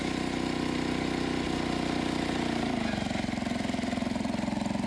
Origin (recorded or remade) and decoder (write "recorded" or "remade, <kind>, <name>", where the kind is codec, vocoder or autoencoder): recorded